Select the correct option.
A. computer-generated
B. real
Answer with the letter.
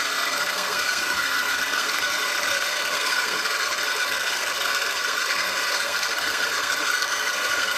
A